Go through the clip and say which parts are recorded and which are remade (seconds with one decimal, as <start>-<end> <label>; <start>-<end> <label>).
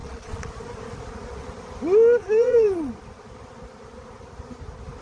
0.0-0.5 remade; 0.5-2.2 recorded; 2.2-2.9 remade; 2.9-5.0 recorded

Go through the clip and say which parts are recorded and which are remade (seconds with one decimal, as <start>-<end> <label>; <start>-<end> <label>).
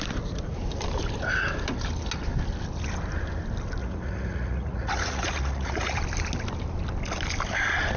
0.0-3.8 recorded; 3.8-6.0 remade; 6.0-8.0 recorded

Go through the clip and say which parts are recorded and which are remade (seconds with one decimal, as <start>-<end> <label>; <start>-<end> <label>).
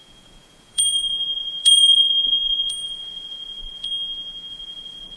0.0-3.9 remade; 3.9-4.5 recorded; 4.5-5.2 remade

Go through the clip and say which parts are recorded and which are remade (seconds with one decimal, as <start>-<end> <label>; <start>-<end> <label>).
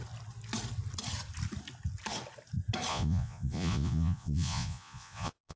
0.0-2.9 recorded; 2.9-5.6 remade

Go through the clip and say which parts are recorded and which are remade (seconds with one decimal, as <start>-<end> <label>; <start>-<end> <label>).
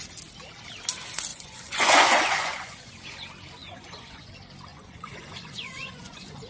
0.0-1.3 recorded; 1.3-2.9 remade; 2.9-3.6 recorded; 3.6-4.3 remade; 4.3-4.7 recorded; 4.7-6.5 remade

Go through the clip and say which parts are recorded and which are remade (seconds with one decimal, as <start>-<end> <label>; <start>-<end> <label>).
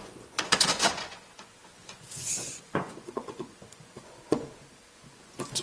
0.0-5.6 remade